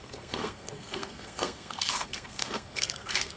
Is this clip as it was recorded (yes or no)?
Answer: no